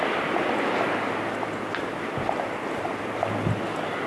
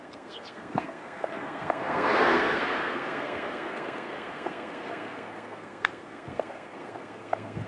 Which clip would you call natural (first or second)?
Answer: first